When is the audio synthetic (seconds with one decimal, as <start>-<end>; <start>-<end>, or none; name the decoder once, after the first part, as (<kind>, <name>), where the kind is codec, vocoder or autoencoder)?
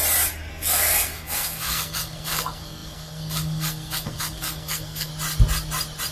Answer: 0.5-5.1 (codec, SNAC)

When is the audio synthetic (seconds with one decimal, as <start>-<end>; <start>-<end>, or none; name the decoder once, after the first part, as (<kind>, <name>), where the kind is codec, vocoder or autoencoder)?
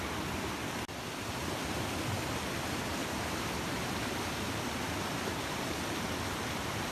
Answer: 3.0-4.0 (vocoder, BigVGAN v2)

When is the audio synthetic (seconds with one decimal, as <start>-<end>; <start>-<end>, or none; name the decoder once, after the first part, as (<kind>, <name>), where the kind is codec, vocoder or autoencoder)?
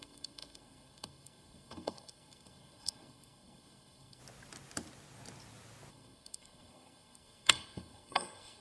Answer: 0.0-4.2 (codec, SNAC); 5.9-8.6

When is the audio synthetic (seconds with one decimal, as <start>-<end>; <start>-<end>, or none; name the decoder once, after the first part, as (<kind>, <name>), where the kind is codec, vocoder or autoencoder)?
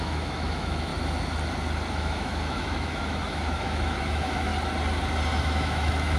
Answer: 0.0-0.9 (autoencoder, DAC-VAE); 1.9-4.5; 5.4-6.2